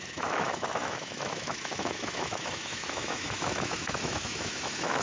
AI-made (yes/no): yes